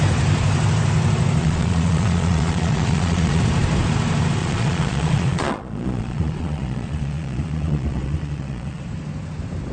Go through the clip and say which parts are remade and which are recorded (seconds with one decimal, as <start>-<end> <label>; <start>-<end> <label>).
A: 0.0-1.4 recorded; 1.4-3.4 remade; 3.4-4.4 recorded; 4.4-8.8 remade; 8.8-9.7 recorded